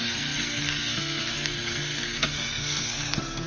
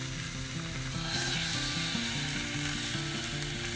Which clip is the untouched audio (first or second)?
second